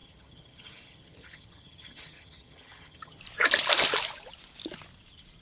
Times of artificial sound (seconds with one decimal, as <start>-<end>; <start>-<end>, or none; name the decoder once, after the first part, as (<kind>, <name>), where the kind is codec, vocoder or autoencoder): 0.0-3.2 (vocoder, HiFi-GAN)